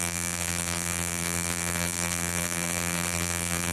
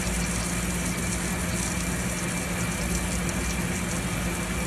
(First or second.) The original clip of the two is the second